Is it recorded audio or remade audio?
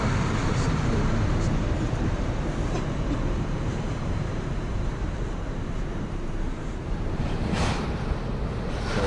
remade